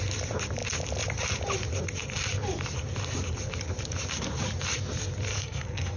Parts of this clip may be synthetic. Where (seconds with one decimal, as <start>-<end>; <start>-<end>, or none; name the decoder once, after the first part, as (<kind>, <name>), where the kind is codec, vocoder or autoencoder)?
5.3-6.0 (codec, SNAC)